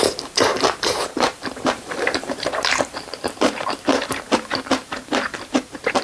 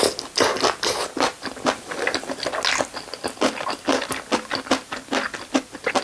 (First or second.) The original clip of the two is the second